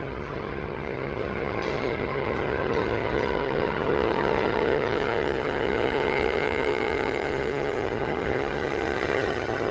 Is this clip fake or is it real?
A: fake